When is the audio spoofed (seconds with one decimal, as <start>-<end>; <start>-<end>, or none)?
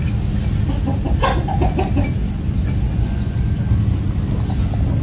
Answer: 2.9-3.4